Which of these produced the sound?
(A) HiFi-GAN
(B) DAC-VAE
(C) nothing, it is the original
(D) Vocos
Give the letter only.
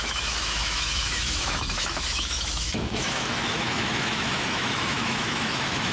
B